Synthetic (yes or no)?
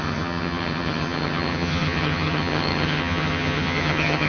yes